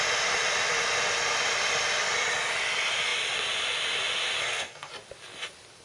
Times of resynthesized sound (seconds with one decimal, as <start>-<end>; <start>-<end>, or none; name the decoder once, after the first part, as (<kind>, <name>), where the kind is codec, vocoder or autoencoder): 4.4-4.9 (codec, SNAC)